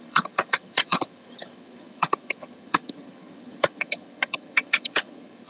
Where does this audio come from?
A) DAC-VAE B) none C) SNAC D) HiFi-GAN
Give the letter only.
D